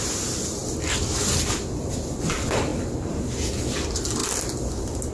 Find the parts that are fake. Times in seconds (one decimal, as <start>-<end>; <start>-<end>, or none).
none